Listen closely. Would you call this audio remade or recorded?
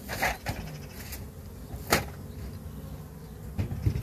recorded